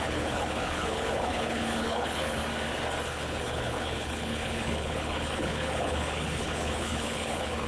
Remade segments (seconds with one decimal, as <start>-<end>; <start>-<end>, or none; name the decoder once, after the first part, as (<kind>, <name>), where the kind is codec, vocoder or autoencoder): 0.0-2.4 (codec, HILCodec); 3.1-7.7